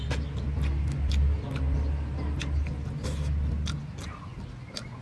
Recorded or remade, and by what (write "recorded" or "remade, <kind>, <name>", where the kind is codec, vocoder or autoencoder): recorded